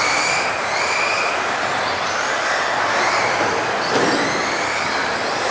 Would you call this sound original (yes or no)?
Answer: yes